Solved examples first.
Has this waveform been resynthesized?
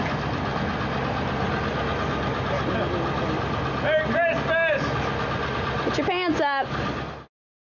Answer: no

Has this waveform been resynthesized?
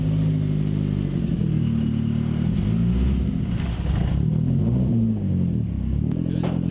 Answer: no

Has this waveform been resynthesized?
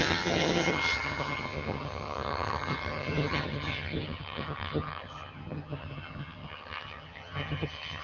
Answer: yes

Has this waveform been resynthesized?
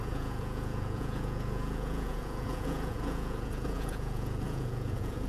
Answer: yes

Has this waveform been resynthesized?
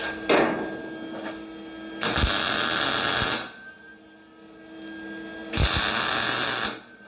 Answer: no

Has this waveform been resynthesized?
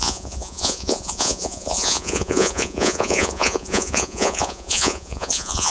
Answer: yes